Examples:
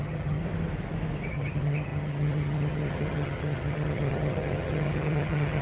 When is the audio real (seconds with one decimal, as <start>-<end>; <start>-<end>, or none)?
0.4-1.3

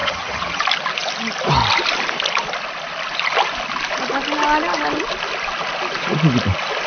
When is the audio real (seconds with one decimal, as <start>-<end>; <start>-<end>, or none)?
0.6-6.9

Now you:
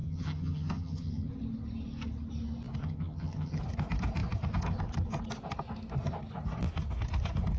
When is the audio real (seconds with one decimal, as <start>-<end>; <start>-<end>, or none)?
1.3-2.8; 3.6-7.6

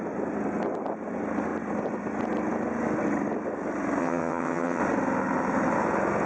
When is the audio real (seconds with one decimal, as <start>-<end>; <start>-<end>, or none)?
0.0-4.0; 4.8-6.3

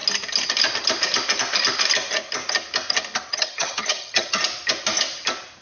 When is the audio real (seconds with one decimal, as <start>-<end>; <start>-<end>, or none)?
0.0-3.3; 4.4-5.6

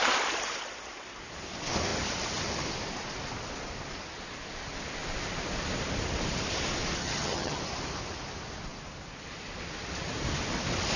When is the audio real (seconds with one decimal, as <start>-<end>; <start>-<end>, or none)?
0.0-7.0; 7.6-11.0